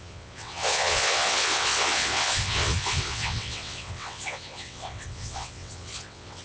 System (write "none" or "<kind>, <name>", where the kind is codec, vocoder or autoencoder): vocoder, WaveNeXt